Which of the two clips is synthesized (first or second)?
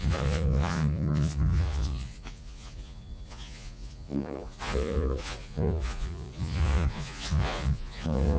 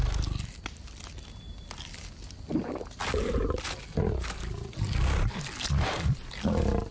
first